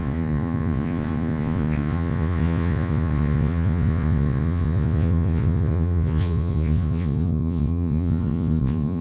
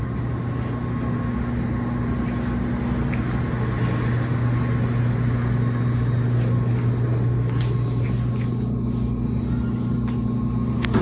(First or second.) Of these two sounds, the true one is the second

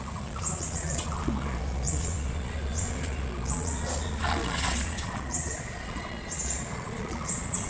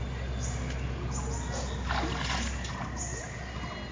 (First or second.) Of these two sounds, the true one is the second